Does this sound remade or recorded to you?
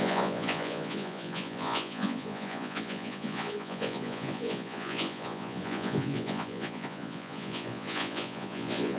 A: remade